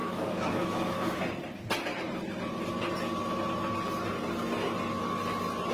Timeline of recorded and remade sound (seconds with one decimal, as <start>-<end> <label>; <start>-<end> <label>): 0.0-1.2 remade; 1.2-5.7 recorded